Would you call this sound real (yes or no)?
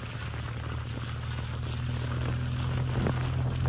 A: yes